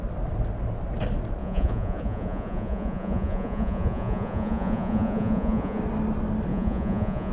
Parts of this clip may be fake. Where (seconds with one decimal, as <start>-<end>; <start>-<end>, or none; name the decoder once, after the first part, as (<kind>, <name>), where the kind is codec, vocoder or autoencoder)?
1.4-5.8 (vocoder, Vocos); 6.5-7.3